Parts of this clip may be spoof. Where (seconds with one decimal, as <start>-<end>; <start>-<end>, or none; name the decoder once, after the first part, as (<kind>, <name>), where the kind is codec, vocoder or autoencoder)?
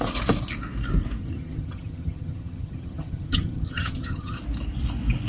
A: 1.2-4.4 (vocoder, HiFi-GAN)